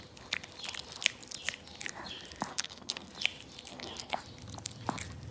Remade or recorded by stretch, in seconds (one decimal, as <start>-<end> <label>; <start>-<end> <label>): 0.0-2.5 recorded; 2.5-3.1 remade; 3.1-3.7 recorded; 3.7-4.2 remade; 4.2-5.3 recorded